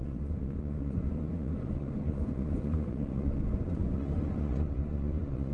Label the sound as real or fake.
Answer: fake